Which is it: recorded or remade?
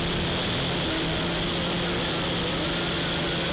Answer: recorded